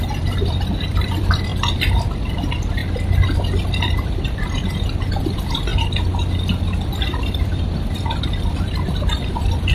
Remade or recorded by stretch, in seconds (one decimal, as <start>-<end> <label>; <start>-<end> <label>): 0.0-1.5 remade; 1.5-2.3 recorded; 2.3-2.8 remade; 2.8-3.7 recorded; 3.7-5.7 remade; 5.7-7.7 recorded; 7.7-9.7 remade